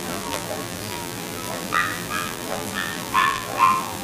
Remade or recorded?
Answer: remade